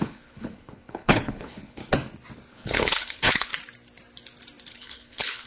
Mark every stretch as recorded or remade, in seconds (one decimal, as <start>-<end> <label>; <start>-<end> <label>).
0.0-1.8 remade; 1.8-2.5 recorded; 2.5-3.5 remade; 3.5-4.7 recorded; 4.7-5.5 remade